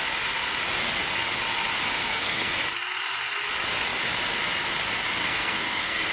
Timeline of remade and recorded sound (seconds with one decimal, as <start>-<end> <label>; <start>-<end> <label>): 0.0-2.0 recorded; 2.0-2.6 remade; 2.6-5.2 recorded; 5.2-6.1 remade